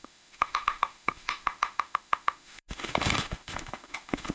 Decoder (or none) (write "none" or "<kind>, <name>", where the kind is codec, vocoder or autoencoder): autoencoder, DAC-VAE